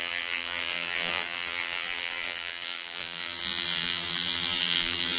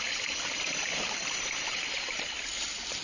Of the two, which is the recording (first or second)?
second